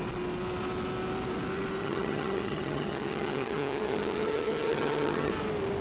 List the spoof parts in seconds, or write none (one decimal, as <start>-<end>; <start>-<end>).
1.8-5.3